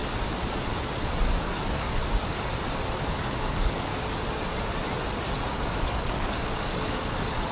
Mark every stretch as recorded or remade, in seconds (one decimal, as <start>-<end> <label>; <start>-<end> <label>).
0.0-1.4 recorded; 1.4-2.0 remade; 2.0-3.0 recorded; 3.0-3.9 remade; 3.9-5.5 recorded; 5.5-7.5 remade

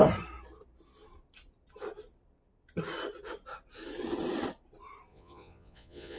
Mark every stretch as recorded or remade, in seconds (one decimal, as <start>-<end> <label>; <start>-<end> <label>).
0.0-5.1 recorded; 5.1-6.2 remade

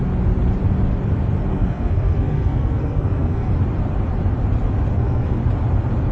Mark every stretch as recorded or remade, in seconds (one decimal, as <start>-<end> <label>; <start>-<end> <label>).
0.0-1.5 recorded; 1.5-3.5 remade; 3.5-4.9 recorded; 4.9-5.4 remade; 5.4-6.1 recorded

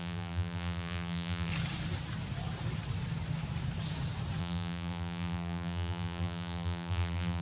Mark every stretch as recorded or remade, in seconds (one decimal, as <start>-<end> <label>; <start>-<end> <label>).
0.0-1.5 remade; 1.5-4.4 recorded; 4.4-7.4 remade

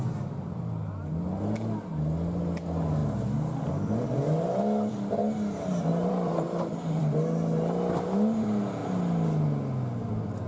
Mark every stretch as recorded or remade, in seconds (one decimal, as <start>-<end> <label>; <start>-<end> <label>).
0.0-5.9 recorded; 5.9-7.0 remade; 7.0-10.5 recorded

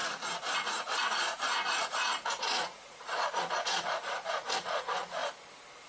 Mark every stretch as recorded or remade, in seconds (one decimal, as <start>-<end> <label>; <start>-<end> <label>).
0.0-5.2 remade; 5.2-5.9 recorded

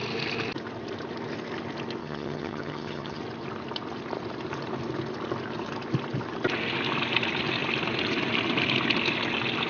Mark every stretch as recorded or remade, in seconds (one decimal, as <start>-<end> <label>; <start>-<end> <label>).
0.0-2.0 recorded; 2.0-3.2 remade; 3.2-9.7 recorded

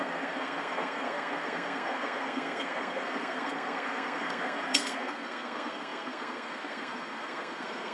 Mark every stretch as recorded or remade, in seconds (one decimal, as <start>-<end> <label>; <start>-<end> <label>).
0.0-7.9 remade